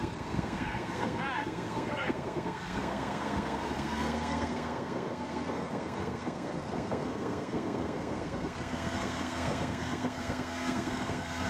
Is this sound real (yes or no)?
no